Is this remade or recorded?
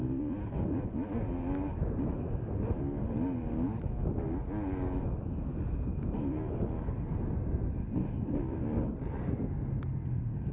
recorded